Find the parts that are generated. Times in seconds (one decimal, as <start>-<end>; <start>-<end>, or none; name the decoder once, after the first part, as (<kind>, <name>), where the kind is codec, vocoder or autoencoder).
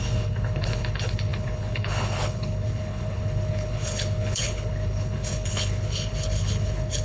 0.0-7.0 (codec, HILCodec)